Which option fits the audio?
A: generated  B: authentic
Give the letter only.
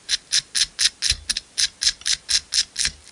B